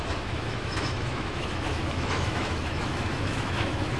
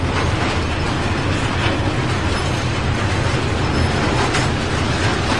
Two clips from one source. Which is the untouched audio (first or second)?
second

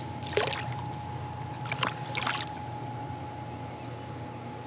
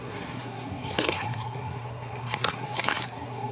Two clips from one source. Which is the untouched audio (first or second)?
first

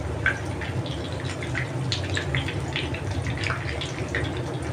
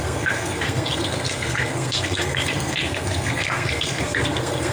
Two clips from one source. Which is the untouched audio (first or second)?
first